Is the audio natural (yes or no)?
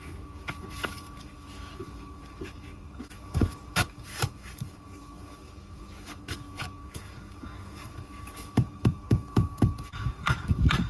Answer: no